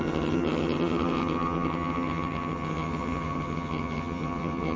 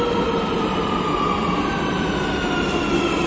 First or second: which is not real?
first